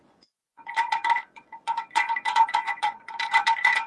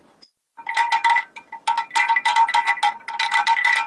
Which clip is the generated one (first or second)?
first